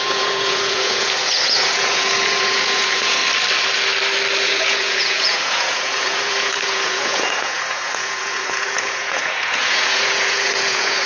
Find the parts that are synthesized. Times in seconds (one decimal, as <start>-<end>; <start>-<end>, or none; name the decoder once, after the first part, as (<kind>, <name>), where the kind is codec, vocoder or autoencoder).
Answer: 0.0-3.2 (vocoder, Vocos); 4.4-11.1